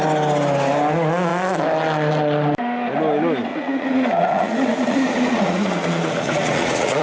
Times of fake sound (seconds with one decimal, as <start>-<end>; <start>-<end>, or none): 3.5-7.0